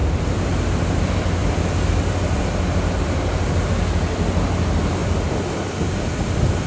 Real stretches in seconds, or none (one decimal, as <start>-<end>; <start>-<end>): 0.0-6.7